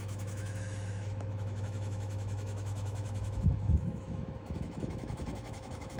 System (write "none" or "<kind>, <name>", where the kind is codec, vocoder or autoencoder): autoencoder, DAC-VAE